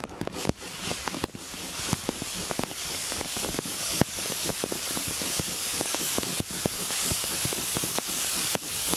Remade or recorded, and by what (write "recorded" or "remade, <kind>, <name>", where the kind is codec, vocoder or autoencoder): remade, codec, DAC